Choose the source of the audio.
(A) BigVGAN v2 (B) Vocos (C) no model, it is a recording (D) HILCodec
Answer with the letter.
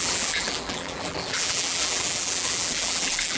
A